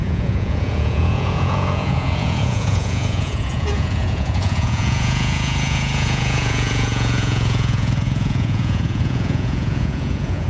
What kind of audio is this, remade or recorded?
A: remade